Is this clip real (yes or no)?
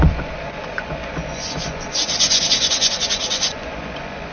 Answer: no